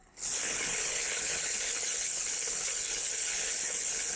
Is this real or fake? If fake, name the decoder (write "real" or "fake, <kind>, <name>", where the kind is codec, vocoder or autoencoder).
fake, codec, HILCodec